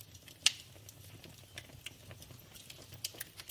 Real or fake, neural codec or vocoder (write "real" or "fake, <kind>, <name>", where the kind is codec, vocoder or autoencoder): real